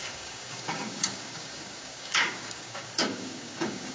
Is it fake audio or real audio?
fake